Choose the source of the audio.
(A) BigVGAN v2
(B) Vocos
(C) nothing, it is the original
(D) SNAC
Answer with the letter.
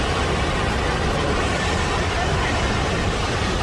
C